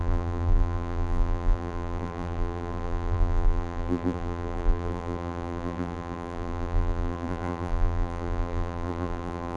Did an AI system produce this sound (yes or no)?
yes